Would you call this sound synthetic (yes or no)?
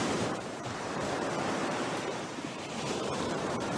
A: yes